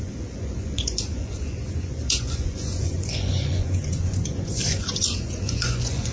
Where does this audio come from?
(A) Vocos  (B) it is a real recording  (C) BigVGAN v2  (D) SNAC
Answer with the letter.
A